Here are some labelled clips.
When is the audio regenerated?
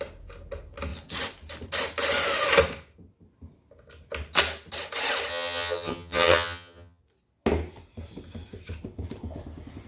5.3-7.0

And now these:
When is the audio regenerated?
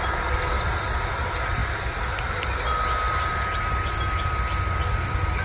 none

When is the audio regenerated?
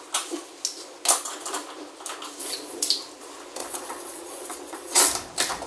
2.4-2.9; 3.6-5.0